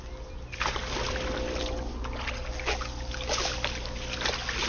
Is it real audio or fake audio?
real